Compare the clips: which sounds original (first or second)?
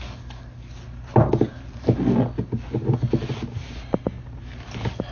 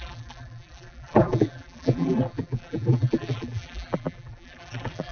first